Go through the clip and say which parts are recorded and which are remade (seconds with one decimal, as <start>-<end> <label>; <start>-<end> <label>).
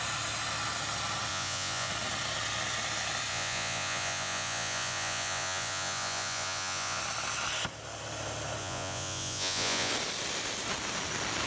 0.0-1.3 recorded; 1.3-1.9 remade; 1.9-3.3 recorded; 3.3-7.0 remade; 7.0-8.6 recorded; 8.6-9.9 remade; 9.9-11.5 recorded